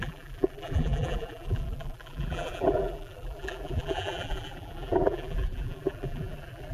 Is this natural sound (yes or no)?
no